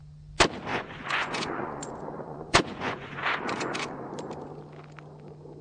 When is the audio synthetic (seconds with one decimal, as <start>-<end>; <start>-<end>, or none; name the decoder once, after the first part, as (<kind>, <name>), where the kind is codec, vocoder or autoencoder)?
0.7-4.1 (vocoder, Vocos)